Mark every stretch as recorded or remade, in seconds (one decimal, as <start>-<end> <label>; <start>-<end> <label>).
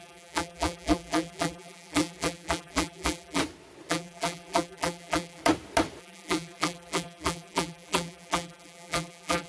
0.0-3.4 remade; 3.4-3.9 recorded; 3.9-5.4 remade; 5.4-6.0 recorded; 6.0-9.5 remade